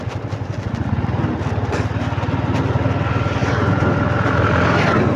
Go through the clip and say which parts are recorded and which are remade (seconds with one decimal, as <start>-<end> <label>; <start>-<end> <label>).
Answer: 0.0-5.2 recorded